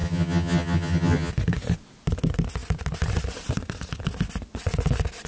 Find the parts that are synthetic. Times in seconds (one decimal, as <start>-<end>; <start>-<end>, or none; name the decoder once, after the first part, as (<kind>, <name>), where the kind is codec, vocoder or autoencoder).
0.0-1.3 (vocoder, HiFi-GAN)